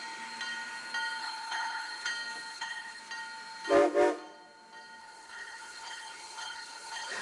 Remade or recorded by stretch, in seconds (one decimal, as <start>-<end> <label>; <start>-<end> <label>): 0.0-1.2 recorded; 1.2-2.1 remade; 2.1-2.5 recorded; 2.5-3.0 remade; 3.0-5.0 recorded; 5.0-7.2 remade